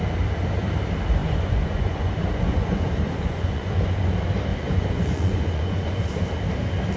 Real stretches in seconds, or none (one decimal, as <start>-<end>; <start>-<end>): 0.0-1.2; 4.1-4.5; 6.2-7.0